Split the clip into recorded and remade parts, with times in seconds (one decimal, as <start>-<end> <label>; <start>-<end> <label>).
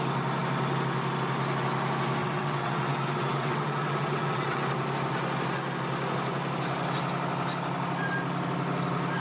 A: 0.0-2.2 recorded; 2.2-4.6 remade; 4.6-9.2 recorded